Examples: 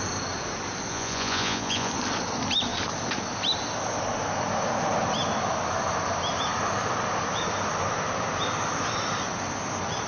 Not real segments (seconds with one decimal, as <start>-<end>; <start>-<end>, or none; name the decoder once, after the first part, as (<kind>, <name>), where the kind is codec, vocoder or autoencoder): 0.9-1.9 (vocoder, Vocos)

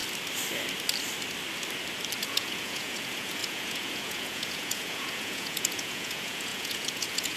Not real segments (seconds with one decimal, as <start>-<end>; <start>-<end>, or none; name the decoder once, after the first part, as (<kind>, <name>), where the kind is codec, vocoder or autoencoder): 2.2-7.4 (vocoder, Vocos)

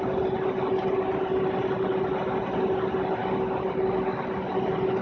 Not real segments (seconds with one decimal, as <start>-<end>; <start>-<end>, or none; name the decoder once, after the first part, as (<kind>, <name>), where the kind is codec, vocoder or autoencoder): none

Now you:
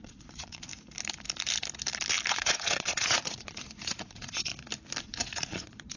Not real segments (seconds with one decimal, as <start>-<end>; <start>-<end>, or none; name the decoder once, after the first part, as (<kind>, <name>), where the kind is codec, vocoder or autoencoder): 0.0-0.7 (vocoder, Vocos); 2.3-4.5; 5.0-6.0

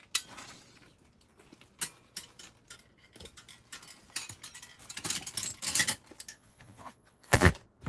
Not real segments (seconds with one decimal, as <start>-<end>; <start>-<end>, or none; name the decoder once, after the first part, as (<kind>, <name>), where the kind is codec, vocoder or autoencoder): 6.3-7.5 (vocoder, Vocos)

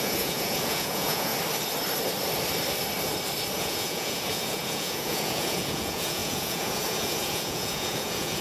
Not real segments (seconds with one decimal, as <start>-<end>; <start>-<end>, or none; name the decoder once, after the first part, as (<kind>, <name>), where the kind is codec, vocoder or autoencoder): 0.0-1.3 (vocoder, Vocos); 3.6-8.4